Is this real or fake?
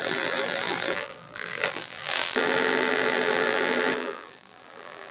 fake